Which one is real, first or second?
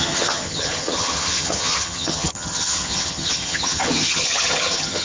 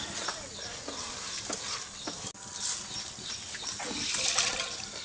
second